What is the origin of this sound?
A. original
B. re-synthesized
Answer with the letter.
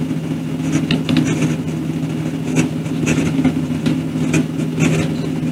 A